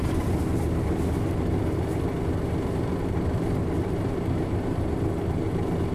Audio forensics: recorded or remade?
recorded